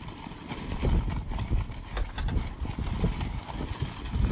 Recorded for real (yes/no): yes